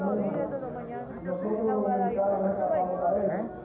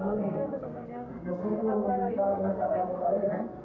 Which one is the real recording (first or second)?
first